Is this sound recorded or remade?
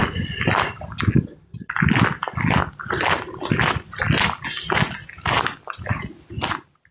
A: recorded